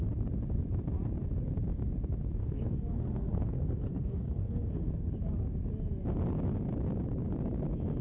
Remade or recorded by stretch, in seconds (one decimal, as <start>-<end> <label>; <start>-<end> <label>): 0.0-2.4 recorded; 2.4-5.1 remade; 5.1-8.0 recorded